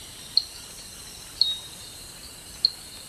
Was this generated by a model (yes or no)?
no